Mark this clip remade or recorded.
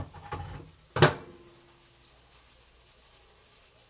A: recorded